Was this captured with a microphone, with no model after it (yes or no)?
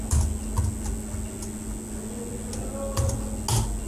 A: yes